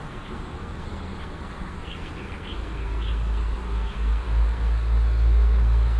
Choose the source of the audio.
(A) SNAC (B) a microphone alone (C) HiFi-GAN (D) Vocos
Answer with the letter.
A